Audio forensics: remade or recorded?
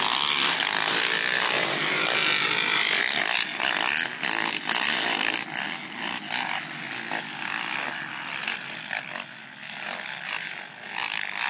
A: recorded